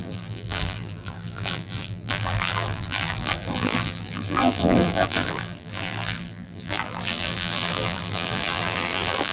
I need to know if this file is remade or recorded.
remade